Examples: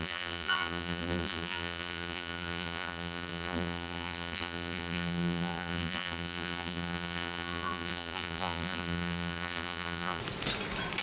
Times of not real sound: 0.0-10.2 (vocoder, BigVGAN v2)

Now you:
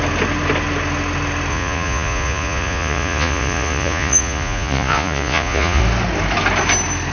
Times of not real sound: 1.5-5.8 (vocoder, Vocos)

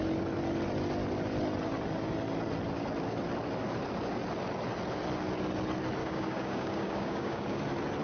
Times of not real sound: 6.0-7.6 (codec, DAC)

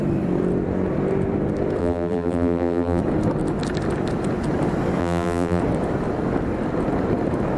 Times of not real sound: 1.8-3.0 (vocoder, BigVGAN v2); 5.0-5.6

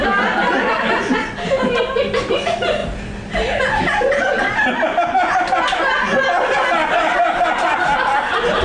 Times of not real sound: none

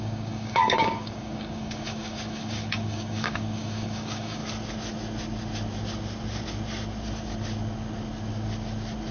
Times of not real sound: 0.0-4.4 (codec, DAC)

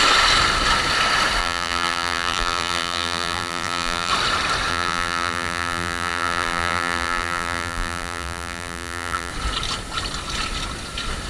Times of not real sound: 1.4-4.1 (vocoder, BigVGAN v2); 4.7-9.3

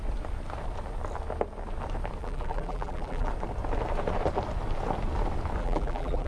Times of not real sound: 2.2-3.3 (vocoder, BigVGAN v2); 5.6-6.3